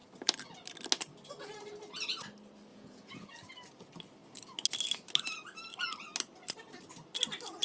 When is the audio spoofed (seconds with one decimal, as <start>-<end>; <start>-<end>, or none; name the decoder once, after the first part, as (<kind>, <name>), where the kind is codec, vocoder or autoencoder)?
2.7-3.3 (vocoder, Vocos)

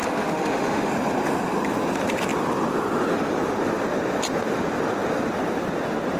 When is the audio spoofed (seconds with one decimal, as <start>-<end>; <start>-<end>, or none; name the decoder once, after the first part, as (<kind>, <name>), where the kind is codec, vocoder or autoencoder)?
0.0-0.9 (autoencoder, DAC-VAE)

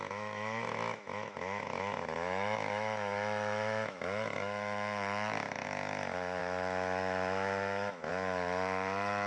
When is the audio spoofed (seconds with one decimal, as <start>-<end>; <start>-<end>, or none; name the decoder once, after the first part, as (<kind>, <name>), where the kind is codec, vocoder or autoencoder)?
0.0-9.3 (autoencoder, DAC-VAE)